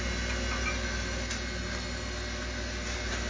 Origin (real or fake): real